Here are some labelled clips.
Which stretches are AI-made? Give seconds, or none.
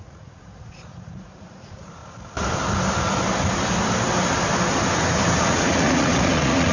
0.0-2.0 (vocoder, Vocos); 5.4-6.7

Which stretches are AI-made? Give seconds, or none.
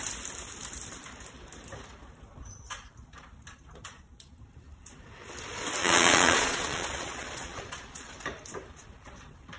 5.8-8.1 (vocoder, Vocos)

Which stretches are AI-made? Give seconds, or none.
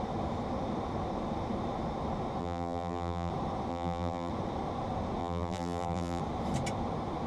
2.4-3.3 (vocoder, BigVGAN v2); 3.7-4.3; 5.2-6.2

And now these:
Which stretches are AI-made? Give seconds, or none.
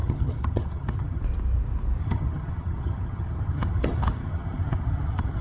0.0-1.2 (vocoder, HiFi-GAN); 2.0-5.4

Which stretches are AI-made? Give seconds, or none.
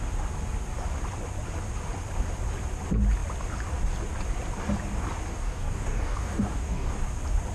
5.3-6.9 (codec, DAC)